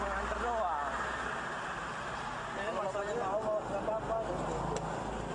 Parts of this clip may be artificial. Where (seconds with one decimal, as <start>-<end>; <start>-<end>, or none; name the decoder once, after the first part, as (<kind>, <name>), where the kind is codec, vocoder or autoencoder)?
none